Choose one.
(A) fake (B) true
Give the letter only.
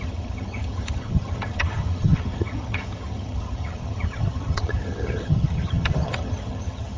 A